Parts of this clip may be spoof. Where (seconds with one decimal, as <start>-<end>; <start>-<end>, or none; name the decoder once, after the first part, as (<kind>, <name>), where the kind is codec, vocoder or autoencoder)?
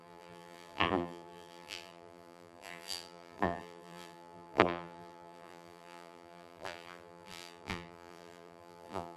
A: 0.0-9.2 (vocoder, BigVGAN v2)